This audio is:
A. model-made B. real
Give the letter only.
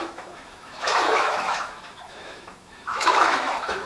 A